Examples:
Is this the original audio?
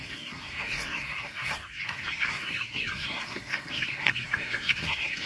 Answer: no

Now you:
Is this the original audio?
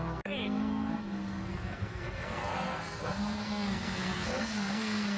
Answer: no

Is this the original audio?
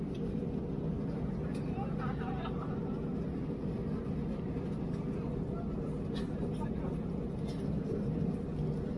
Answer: yes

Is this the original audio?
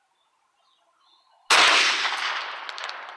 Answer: yes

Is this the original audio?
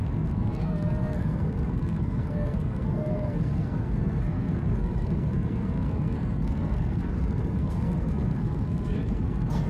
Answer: no